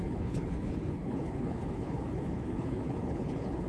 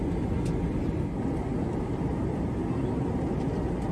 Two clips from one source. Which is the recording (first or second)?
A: second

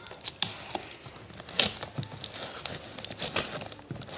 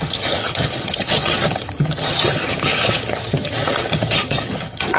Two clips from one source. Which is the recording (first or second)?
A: first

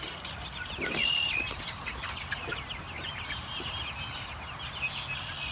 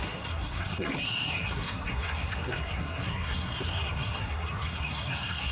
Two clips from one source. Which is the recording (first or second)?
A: first